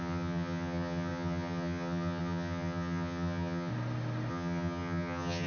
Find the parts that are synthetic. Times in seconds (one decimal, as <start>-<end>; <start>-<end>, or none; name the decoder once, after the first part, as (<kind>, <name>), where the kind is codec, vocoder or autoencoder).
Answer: 0.0-3.7 (vocoder, HiFi-GAN); 4.3-5.5